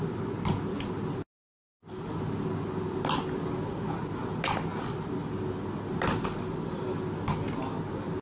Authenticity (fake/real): real